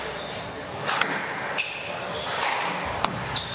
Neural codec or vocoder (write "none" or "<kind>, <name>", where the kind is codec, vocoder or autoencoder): none